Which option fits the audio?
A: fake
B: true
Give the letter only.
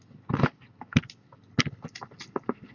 B